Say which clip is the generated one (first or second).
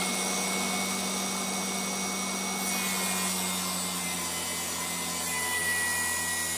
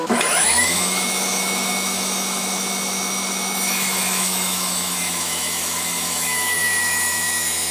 second